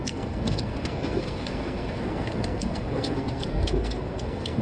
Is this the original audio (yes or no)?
no